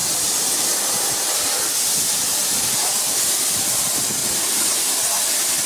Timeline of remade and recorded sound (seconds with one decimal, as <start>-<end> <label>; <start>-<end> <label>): 0.0-3.4 remade; 3.4-4.2 recorded; 4.2-5.2 remade; 5.2-5.7 recorded